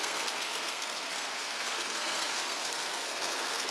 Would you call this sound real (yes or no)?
no